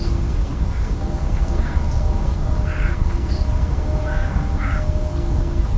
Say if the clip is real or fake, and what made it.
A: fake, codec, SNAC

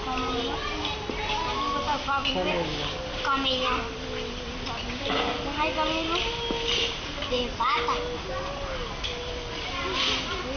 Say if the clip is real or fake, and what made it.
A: real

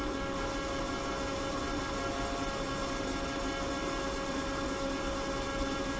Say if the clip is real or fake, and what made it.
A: real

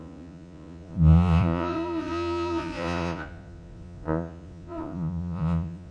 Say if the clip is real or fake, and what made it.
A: fake, vocoder, Vocos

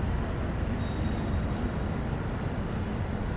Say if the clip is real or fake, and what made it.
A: real